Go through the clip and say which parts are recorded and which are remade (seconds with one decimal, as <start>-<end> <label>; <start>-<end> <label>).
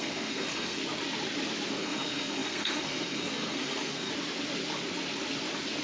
0.0-0.8 remade; 0.8-1.7 recorded; 1.7-4.1 remade; 4.1-5.8 recorded